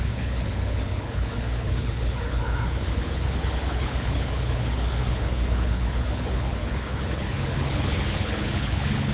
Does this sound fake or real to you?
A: fake